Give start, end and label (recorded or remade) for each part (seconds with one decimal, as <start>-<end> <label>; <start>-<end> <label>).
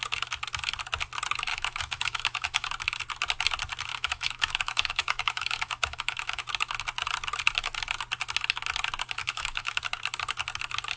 0.0-1.5 recorded; 1.5-2.7 remade; 2.7-3.9 recorded; 3.9-6.4 remade; 6.4-9.2 recorded; 9.2-9.8 remade; 9.8-11.0 recorded